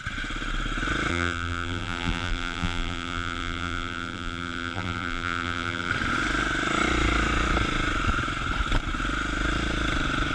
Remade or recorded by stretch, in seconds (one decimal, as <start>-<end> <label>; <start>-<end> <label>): 0.0-1.1 recorded; 1.1-5.9 remade; 5.9-10.3 recorded